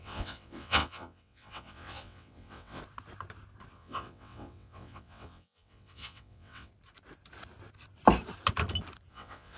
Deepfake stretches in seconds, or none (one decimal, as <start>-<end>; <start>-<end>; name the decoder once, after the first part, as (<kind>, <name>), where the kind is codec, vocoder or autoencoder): 0.0-2.8 (vocoder, WaveNeXt); 3.7-6.7; 9.1-9.6